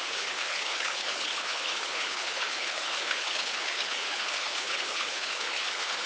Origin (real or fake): fake